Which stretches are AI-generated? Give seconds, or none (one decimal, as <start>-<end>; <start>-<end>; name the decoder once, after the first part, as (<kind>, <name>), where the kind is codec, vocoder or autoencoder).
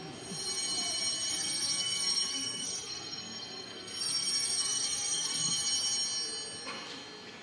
1.3-5.5 (codec, SNAC)